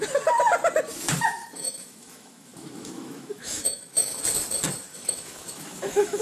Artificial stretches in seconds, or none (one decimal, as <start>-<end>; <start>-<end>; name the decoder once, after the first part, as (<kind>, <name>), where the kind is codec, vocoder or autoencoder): 1.4-4.2 (autoencoder, DAC-VAE); 4.9-6.2